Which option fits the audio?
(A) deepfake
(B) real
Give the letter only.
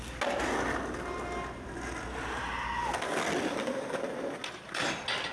B